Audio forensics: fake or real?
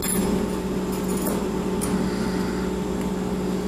real